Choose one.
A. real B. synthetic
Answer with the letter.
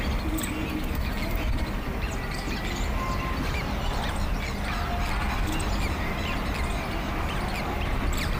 A